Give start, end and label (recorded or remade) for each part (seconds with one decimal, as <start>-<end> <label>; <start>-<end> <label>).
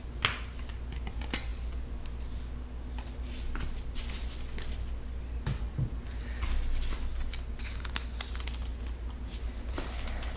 0.0-10.4 recorded